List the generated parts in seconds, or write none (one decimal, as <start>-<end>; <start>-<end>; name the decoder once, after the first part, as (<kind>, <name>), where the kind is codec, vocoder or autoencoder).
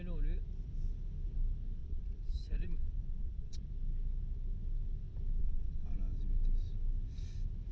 1.8-3.7 (vocoder, Vocos); 5.4-6.0